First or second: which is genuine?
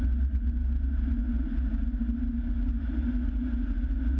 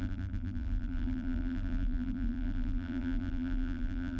first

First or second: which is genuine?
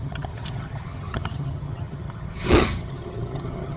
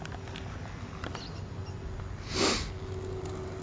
second